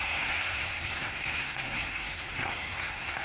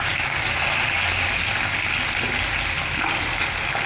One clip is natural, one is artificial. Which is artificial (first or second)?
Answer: first